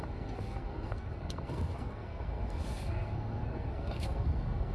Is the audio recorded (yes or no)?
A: no